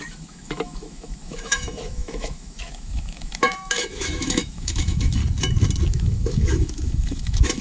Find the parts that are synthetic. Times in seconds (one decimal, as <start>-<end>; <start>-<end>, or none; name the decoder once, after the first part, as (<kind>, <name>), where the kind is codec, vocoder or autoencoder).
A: 0.0-5.2 (autoencoder, DAC-VAE); 5.9-7.6